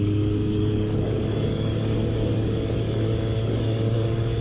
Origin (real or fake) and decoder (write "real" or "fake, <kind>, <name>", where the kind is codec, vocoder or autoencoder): fake, codec, DAC